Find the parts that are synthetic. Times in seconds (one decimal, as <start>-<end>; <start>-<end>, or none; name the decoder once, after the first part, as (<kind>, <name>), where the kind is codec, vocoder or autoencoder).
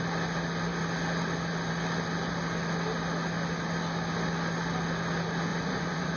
5.5-6.2 (vocoder, Vocos)